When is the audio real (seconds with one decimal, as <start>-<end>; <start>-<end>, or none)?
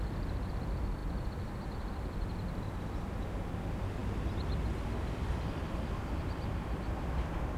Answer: 0.0-1.0; 2.6-7.6